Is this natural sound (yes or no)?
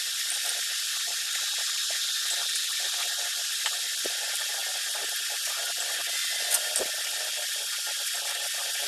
yes